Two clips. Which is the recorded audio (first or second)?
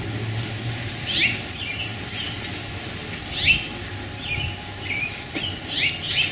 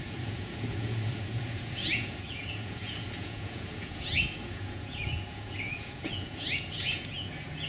first